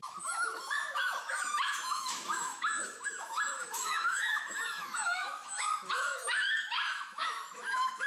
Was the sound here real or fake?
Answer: fake